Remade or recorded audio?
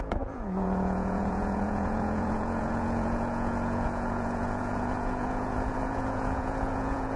remade